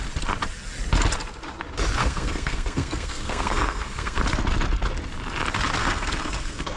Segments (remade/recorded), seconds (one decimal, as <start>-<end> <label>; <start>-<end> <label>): 0.0-2.0 recorded; 2.0-4.2 remade; 4.2-5.8 recorded; 5.8-6.8 remade